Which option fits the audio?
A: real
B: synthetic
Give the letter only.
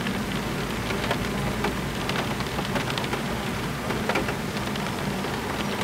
A